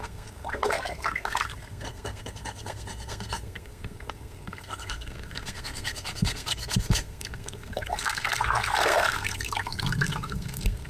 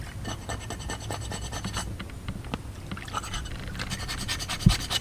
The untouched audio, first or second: second